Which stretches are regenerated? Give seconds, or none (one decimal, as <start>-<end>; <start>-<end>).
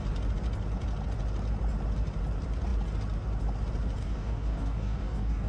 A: 4.0-5.5